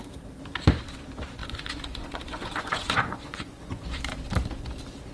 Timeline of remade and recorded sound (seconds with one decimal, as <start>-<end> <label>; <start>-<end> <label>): 0.0-1.4 recorded; 1.4-4.0 remade; 4.0-5.1 recorded